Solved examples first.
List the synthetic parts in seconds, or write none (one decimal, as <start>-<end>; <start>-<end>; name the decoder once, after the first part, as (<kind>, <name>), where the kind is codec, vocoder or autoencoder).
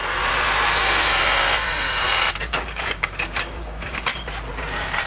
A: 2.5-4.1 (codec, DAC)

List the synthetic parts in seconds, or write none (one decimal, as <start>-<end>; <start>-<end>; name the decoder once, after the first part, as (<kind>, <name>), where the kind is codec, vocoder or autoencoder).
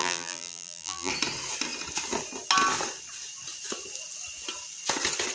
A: 0.0-1.1 (vocoder, BigVGAN v2)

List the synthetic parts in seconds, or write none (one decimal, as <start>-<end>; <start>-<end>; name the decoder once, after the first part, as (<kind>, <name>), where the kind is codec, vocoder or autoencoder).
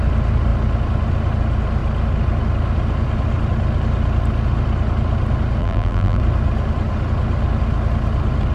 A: 5.6-6.2 (vocoder, BigVGAN v2)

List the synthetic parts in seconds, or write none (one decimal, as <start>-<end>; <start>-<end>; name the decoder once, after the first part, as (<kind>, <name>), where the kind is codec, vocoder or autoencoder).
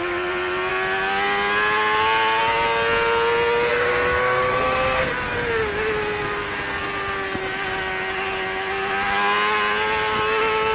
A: 3.7-5.1 (codec, SNAC)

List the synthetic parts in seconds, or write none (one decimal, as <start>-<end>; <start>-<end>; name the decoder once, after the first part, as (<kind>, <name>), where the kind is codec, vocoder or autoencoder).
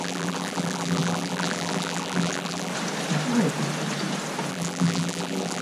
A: 0.0-2.7 (vocoder, BigVGAN v2); 4.5-5.6